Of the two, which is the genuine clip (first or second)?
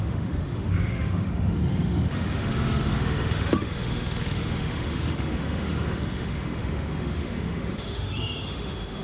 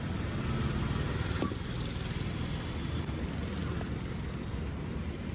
second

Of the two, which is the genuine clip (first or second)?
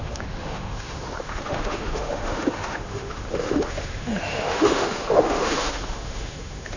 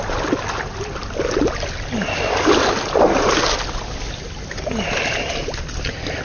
second